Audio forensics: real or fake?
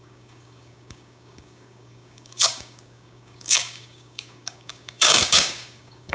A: fake